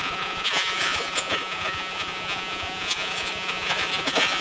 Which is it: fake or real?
fake